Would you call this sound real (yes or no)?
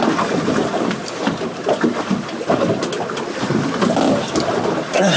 yes